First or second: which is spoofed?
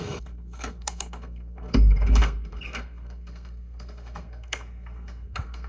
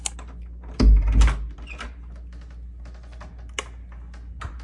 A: first